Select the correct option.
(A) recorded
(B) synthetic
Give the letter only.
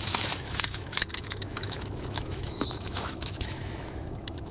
B